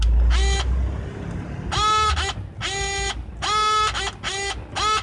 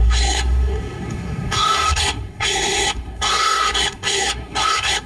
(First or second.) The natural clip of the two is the first